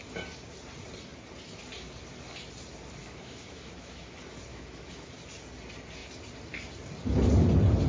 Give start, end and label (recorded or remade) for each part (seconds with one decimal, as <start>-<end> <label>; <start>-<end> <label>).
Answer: 0.0-3.0 recorded; 3.0-4.1 remade; 4.1-4.5 recorded; 4.5-5.1 remade; 5.1-7.9 recorded